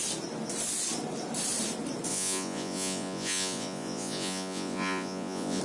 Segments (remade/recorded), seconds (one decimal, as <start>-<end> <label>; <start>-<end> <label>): 0.0-2.1 recorded; 2.1-5.6 remade